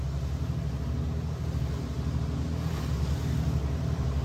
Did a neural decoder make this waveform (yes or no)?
no